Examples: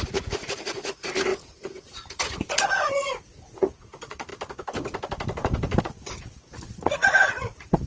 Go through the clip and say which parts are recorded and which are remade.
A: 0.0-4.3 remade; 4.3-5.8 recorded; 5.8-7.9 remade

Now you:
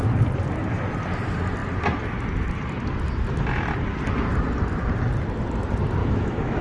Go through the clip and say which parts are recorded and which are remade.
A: 0.0-6.0 recorded; 6.0-6.6 remade

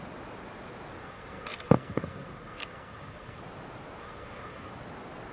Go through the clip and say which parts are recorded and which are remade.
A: 0.0-1.0 recorded; 1.0-3.4 remade; 3.4-4.0 recorded; 4.0-4.7 remade; 4.7-5.3 recorded

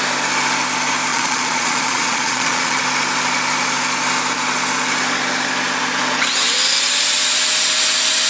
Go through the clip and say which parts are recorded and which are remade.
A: 0.0-1.1 recorded; 1.1-2.8 remade; 2.8-8.3 recorded